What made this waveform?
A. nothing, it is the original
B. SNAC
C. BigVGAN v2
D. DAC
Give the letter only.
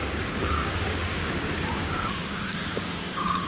D